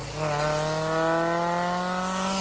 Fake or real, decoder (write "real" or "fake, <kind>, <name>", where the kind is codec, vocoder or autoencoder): real